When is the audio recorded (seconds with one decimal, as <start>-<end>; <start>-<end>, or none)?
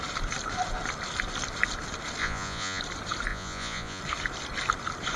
0.0-2.2; 2.8-3.3; 4.0-5.2